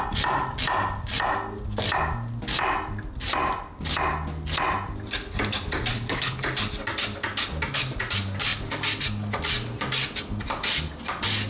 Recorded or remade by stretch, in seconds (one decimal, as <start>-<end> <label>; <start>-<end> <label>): 0.0-5.9 recorded; 5.9-6.4 remade; 6.4-11.5 recorded